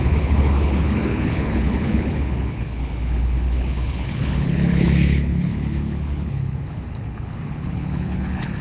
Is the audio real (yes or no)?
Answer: no